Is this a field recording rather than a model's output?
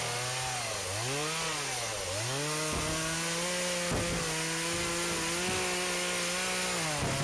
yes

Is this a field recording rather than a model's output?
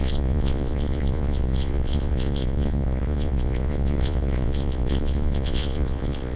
no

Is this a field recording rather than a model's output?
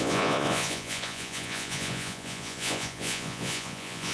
no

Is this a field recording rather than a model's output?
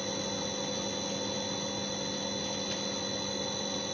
yes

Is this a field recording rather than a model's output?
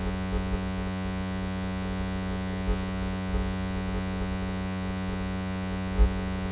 no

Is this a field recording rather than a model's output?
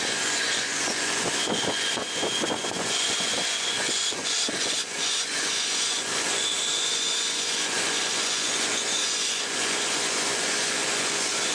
no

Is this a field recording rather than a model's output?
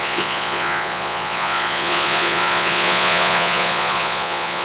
no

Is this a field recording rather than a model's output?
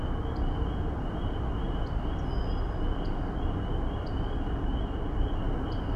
yes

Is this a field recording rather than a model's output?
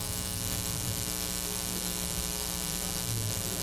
yes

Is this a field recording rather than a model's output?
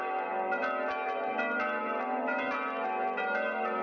yes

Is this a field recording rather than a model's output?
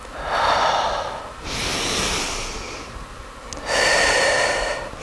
yes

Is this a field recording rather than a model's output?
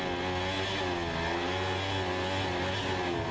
yes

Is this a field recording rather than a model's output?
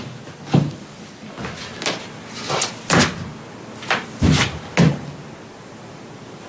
yes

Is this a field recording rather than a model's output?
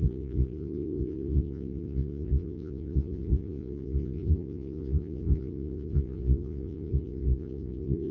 no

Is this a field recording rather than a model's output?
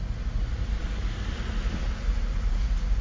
yes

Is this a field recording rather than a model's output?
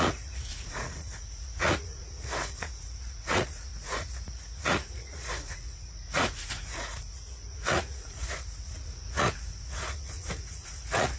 no